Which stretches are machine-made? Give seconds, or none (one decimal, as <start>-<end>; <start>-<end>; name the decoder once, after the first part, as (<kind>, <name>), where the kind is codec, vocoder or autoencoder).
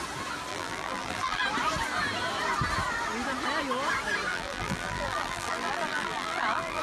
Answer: 0.5-1.4 (vocoder, BigVGAN v2); 4.3-6.8